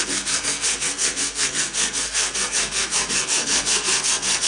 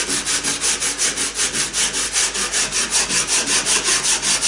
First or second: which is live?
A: second